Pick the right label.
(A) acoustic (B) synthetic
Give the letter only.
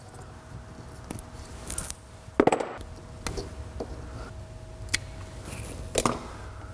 A